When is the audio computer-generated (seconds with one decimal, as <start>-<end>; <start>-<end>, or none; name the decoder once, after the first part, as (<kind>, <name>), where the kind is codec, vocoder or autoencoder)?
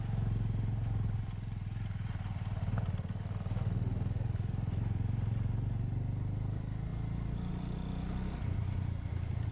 none